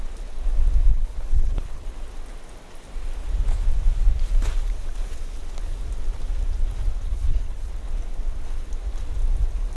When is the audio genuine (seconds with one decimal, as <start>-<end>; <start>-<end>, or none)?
0.0-0.9; 1.9-7.1; 7.7-9.8